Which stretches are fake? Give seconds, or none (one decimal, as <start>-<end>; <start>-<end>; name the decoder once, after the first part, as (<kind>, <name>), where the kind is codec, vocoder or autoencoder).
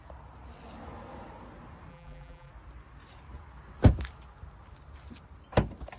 1.9-2.5 (vocoder, BigVGAN v2)